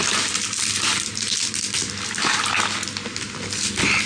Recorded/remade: recorded